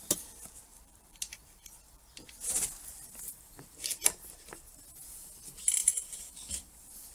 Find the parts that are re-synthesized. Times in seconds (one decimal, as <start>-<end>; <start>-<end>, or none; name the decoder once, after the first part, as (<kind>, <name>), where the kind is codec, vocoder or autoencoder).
0.7-2.9 (vocoder, BigVGAN v2); 5.8-7.1

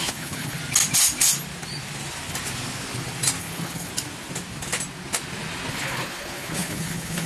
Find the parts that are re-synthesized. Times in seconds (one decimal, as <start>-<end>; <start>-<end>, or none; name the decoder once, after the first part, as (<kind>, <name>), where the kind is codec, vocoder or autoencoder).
0.0-0.6 (codec, HILCodec); 3.4-3.9; 5.7-7.3

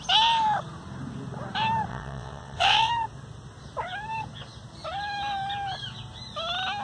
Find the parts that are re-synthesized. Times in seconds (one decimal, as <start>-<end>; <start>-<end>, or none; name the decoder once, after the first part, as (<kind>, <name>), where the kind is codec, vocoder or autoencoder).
1.9-2.9 (vocoder, WaveNeXt)